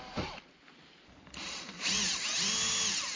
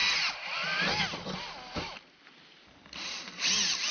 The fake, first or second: first